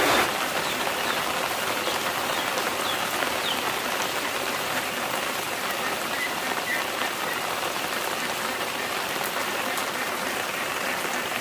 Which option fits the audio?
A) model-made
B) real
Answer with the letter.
A